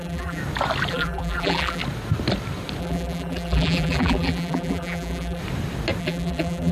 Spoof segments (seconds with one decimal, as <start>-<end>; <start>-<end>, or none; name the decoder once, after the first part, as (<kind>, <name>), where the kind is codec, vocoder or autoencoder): 0.0-0.4 (vocoder, BigVGAN v2); 0.9-1.8; 2.8-5.4; 6.0-6.7